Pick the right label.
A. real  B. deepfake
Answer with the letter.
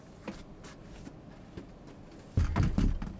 A